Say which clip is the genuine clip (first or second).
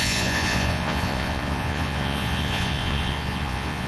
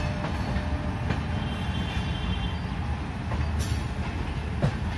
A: second